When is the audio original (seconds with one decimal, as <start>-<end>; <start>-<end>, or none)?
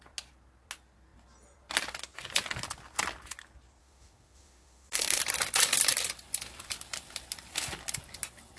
0.0-3.8; 5.2-8.6